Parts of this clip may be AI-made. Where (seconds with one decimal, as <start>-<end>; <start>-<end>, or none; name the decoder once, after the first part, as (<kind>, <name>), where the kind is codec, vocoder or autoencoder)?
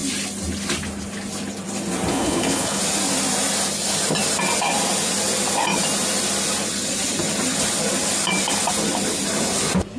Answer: 2.1-2.8 (codec, HILCodec)